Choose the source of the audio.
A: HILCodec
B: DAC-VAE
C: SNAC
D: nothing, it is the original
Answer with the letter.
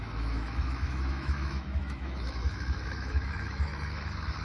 B